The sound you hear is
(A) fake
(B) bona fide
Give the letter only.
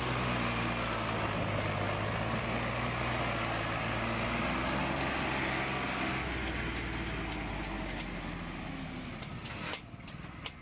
B